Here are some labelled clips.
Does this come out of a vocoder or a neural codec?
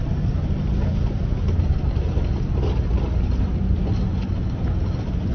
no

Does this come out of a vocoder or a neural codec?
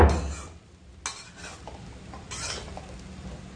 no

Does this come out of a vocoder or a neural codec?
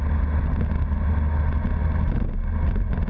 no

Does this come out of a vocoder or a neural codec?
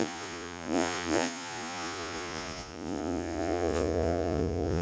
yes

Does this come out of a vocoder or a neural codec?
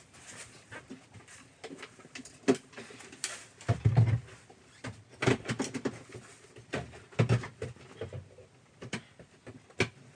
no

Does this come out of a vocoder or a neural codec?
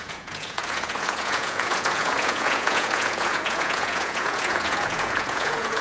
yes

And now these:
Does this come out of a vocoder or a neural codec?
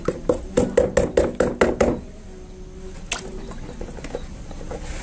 no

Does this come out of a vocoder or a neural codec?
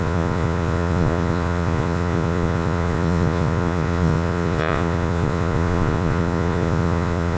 yes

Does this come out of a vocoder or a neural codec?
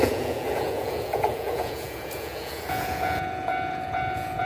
yes